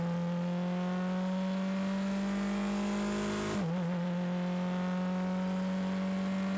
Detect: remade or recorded recorded